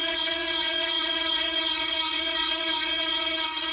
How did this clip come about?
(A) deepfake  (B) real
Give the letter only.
A